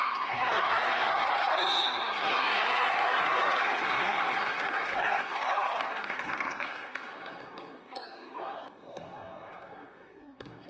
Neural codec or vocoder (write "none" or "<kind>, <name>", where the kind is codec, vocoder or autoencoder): codec, SNAC